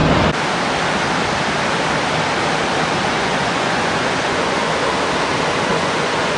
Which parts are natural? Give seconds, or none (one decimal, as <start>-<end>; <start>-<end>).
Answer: 0.0-3.1; 4.7-5.7

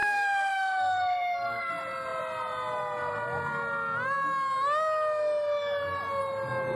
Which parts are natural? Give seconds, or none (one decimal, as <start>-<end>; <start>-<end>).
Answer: 1.7-6.8